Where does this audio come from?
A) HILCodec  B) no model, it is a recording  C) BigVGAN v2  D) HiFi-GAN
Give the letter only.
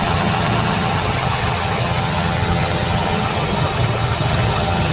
D